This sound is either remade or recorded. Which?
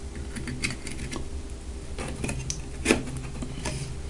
recorded